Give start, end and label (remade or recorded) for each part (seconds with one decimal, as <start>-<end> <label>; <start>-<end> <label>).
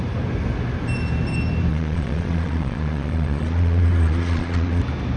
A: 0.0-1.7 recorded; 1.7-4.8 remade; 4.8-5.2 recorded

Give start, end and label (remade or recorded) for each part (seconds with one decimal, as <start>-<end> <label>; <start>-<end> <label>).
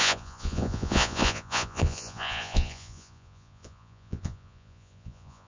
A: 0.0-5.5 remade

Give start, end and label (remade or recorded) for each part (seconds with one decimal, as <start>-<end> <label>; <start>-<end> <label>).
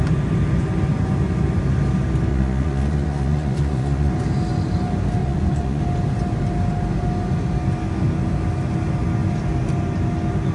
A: 0.0-2.3 recorded; 2.3-4.1 remade; 4.1-5.2 recorded; 5.2-5.8 remade; 5.8-10.5 recorded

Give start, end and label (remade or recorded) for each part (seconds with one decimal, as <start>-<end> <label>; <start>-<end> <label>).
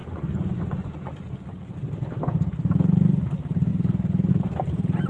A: 0.0-1.2 remade; 1.2-5.1 recorded